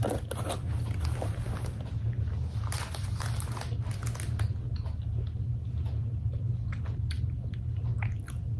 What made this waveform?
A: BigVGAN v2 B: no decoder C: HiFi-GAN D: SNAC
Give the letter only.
B